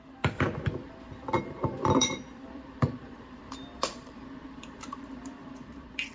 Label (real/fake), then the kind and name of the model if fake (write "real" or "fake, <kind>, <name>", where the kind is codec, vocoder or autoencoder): fake, vocoder, BigVGAN v2